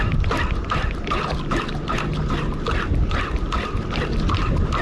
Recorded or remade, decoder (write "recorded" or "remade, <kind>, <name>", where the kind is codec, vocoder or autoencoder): recorded